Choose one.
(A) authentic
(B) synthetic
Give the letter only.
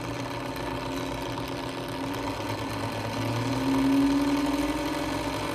A